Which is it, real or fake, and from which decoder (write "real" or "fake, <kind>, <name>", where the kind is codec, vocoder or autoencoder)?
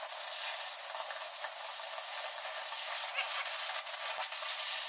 real